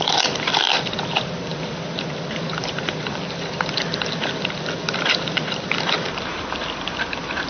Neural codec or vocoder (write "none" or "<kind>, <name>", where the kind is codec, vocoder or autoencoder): vocoder, BigVGAN v2